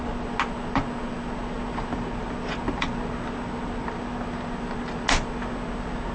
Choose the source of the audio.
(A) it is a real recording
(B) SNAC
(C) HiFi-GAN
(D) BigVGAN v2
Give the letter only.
A